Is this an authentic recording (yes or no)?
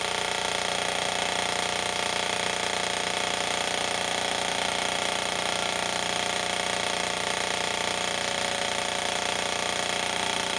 yes